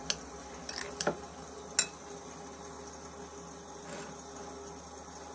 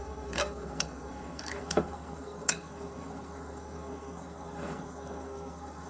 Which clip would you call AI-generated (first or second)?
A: second